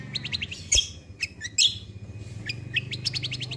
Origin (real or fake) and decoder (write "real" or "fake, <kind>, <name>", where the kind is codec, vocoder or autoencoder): real